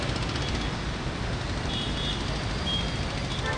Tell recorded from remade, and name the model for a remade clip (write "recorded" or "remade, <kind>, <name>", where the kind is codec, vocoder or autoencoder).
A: recorded